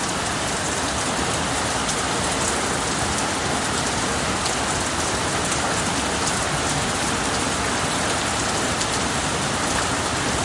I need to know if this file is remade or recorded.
recorded